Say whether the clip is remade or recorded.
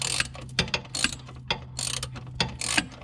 recorded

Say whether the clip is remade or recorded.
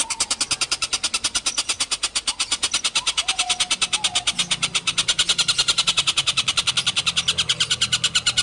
recorded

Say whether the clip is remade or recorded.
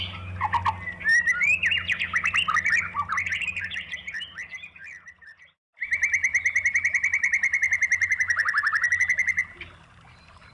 recorded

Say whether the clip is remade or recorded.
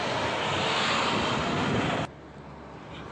recorded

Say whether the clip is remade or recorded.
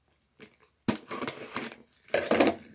recorded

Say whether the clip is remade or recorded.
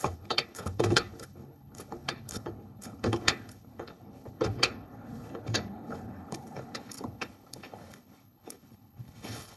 remade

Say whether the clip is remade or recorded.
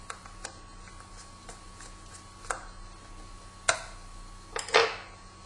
recorded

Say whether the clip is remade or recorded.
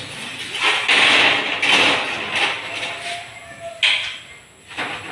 recorded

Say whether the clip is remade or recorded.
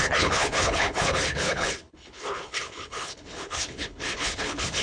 remade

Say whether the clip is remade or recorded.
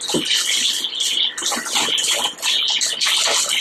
recorded